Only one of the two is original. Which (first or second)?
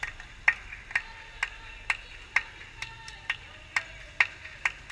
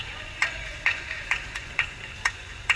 first